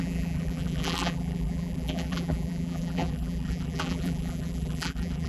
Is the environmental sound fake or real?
fake